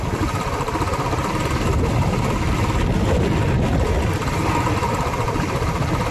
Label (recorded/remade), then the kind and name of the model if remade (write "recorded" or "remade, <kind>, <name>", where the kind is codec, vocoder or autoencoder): recorded